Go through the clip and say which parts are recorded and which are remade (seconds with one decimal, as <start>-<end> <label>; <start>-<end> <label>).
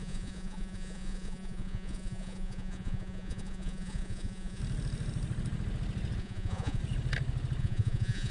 0.0-4.6 remade; 4.6-6.2 recorded; 6.2-6.8 remade; 6.8-7.6 recorded; 7.6-8.3 remade